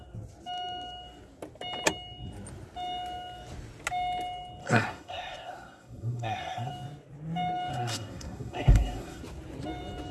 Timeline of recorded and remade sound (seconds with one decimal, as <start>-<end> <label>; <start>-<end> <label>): 0.0-4.6 recorded; 4.6-6.7 remade; 6.7-7.7 recorded; 7.7-9.2 remade; 9.2-10.1 recorded